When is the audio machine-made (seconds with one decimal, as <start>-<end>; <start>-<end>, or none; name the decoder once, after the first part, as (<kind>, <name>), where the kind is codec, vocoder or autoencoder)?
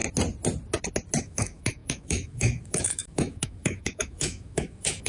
1.2-5.1 (autoencoder, DAC-VAE)